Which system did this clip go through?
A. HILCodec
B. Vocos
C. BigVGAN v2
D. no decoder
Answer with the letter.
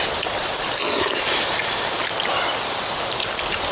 D